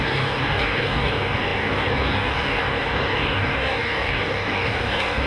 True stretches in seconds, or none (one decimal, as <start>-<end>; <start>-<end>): none